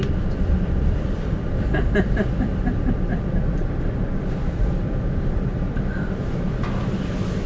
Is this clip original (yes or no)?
no